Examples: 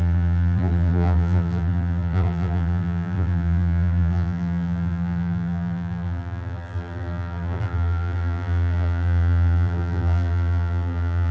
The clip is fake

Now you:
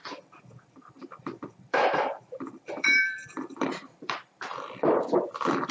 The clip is fake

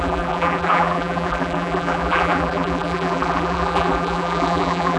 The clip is fake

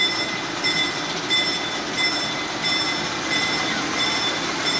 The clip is real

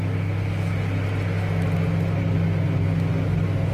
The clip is real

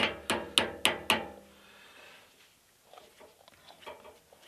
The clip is real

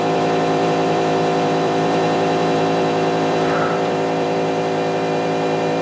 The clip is fake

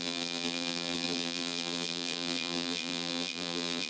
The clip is fake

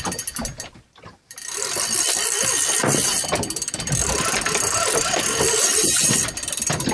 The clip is fake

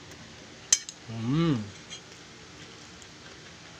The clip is real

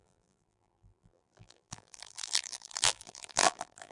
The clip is fake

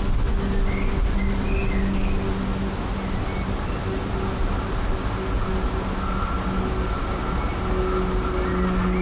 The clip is real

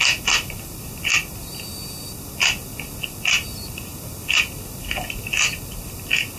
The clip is real